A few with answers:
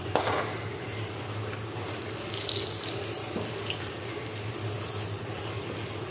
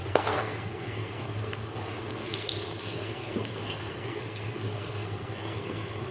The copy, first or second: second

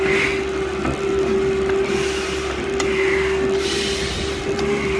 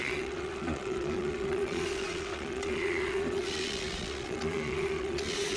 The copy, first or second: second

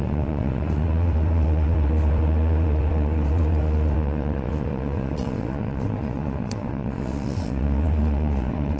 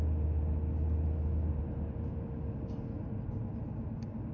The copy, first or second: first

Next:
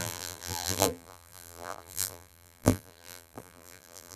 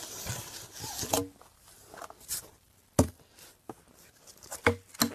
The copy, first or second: first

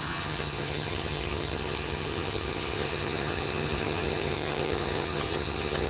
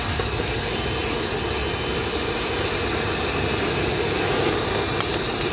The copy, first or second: first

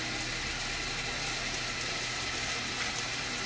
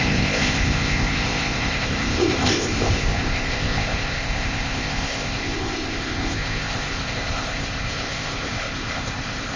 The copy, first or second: second